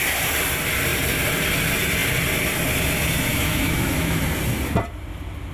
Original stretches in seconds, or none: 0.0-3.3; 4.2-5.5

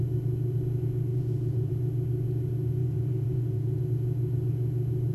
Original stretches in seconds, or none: 0.0-1.1; 1.7-2.8; 3.8-5.1

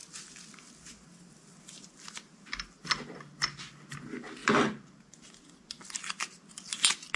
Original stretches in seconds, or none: 0.0-7.2